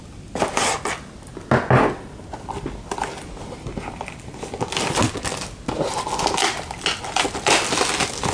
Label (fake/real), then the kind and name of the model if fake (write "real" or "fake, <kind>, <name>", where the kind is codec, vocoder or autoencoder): real